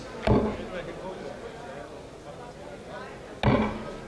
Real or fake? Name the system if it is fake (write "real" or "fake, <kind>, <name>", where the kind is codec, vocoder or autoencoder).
real